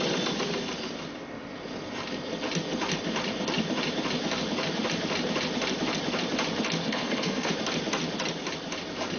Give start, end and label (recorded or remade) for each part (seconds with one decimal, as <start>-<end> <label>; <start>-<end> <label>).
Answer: 0.0-6.8 recorded; 6.8-7.5 remade; 7.5-9.2 recorded